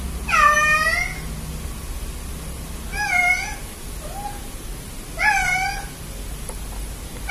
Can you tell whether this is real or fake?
real